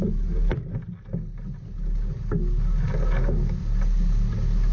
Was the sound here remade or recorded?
recorded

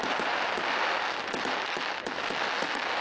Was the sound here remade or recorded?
recorded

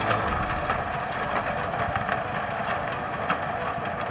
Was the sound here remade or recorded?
recorded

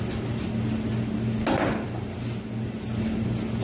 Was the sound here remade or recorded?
recorded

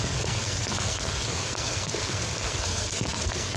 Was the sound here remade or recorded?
remade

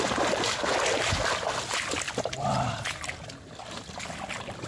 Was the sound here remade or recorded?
recorded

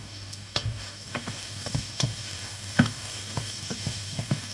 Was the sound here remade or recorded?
remade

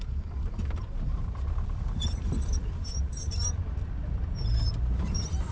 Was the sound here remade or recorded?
remade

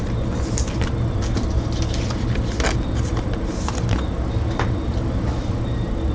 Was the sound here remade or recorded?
recorded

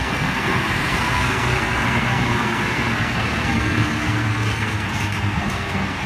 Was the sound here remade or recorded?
remade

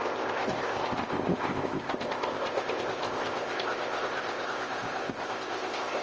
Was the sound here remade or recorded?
remade